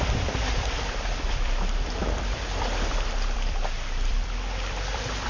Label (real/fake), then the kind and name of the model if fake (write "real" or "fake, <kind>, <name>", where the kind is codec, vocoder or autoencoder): fake, vocoder, BigVGAN v2